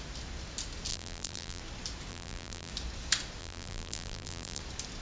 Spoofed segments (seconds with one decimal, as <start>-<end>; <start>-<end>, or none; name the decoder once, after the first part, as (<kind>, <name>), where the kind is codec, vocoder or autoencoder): 0.9-1.6 (vocoder, BigVGAN v2); 2.1-2.7; 3.4-4.6